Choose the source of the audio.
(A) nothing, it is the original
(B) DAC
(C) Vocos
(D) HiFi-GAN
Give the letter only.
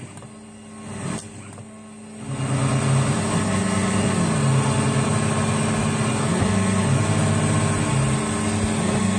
A